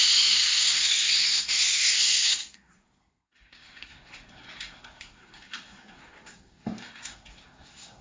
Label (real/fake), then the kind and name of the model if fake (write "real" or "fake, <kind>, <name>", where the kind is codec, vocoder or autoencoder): fake, codec, SNAC